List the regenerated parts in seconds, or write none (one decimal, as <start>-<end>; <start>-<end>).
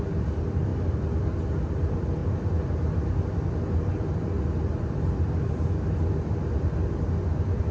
0.0-2.2; 6.3-7.7